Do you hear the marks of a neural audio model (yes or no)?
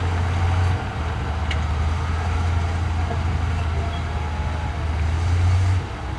no